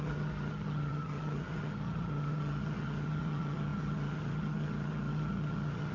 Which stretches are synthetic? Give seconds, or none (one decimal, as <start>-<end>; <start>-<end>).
0.0-5.9